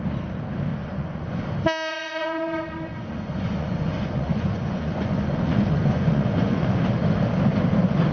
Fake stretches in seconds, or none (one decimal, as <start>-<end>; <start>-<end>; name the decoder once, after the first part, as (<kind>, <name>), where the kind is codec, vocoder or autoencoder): 0.7-1.4 (vocoder, Vocos); 1.9-6.8